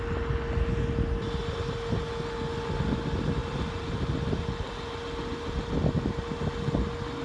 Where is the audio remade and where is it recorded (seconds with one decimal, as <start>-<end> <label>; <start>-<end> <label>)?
0.0-7.2 recorded